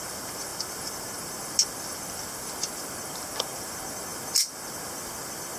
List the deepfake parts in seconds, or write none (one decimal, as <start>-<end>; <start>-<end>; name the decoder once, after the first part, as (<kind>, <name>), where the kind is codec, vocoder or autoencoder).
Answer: none